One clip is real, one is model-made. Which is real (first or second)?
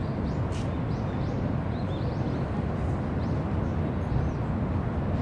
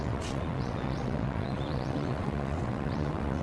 first